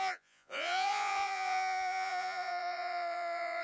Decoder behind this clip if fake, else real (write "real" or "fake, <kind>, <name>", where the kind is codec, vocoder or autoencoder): fake, vocoder, Vocos